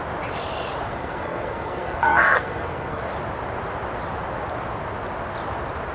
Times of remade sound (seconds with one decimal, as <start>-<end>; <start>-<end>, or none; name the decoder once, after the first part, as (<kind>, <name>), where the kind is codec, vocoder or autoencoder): 0.9-3.0 (codec, SNAC)